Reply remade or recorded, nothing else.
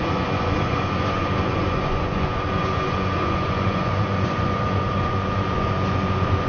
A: remade